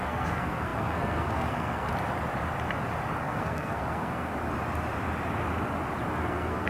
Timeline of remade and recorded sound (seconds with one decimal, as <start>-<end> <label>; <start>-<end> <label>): 0.0-1.9 remade; 1.9-3.2 recorded; 3.2-4.3 remade; 4.3-6.2 recorded; 6.2-6.7 remade